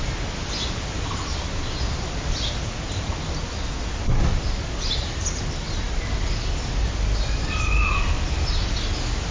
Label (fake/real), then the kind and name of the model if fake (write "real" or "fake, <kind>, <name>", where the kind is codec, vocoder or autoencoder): real